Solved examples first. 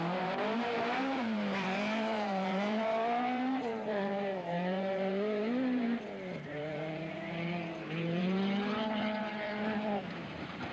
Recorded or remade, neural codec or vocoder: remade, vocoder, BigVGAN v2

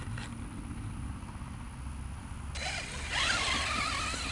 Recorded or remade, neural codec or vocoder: recorded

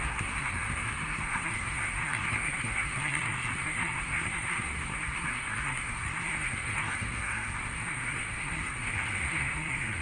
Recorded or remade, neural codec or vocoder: remade, codec, SNAC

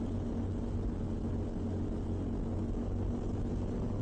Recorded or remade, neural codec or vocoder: recorded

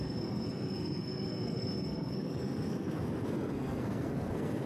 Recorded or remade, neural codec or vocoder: remade, codec, SNAC